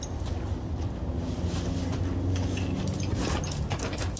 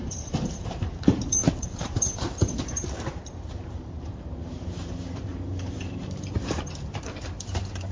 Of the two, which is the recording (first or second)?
first